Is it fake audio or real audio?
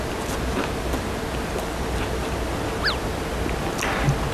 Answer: real